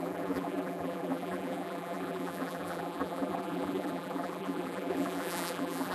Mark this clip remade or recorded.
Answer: remade